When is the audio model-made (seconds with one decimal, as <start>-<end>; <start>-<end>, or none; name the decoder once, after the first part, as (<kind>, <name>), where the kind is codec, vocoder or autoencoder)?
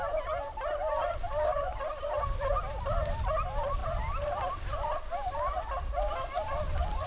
none